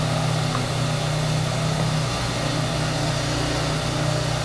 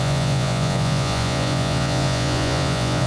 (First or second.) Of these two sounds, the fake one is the second